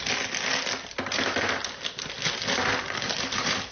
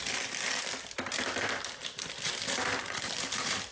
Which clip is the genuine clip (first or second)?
first